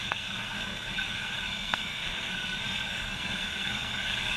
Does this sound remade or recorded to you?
remade